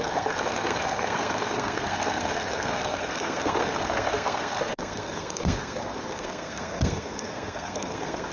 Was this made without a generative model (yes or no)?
no